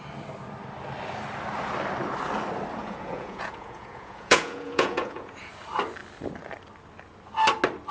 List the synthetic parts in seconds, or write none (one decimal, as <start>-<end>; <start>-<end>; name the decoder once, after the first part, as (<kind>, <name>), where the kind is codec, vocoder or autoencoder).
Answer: 2.8-5.5 (vocoder, Vocos)